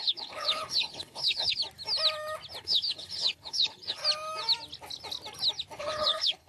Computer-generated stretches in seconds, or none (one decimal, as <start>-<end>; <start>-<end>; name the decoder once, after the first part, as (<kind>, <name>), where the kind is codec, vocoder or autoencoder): 0.0-1.6 (codec, HILCodec); 2.6-4.0; 5.8-6.5